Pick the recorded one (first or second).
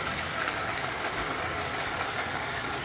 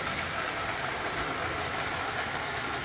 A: second